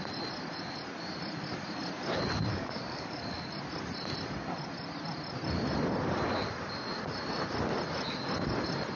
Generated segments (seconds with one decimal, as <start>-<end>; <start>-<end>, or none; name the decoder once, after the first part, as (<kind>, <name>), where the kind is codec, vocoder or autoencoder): 2.5-3.5 (codec, DAC)